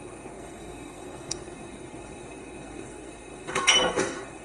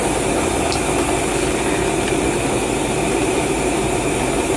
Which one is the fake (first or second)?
first